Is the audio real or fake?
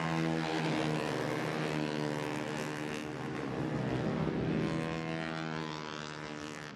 real